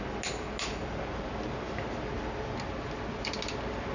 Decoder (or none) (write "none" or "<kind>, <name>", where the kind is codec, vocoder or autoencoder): none